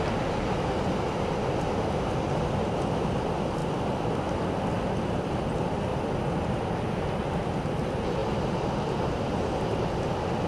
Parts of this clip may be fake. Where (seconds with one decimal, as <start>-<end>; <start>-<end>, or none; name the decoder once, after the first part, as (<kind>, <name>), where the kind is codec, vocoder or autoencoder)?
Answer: none